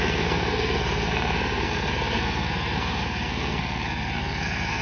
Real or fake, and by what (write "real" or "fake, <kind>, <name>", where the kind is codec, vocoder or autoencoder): fake, codec, SNAC